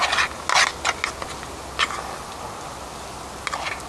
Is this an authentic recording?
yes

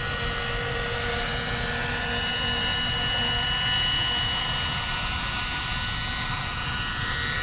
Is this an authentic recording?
yes